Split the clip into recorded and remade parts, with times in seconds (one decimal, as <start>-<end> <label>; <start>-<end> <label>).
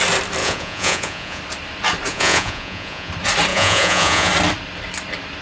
0.0-0.4 recorded; 0.4-1.4 remade; 1.4-2.1 recorded; 2.1-3.1 remade; 3.1-3.5 recorded; 3.5-4.3 remade; 4.3-5.4 recorded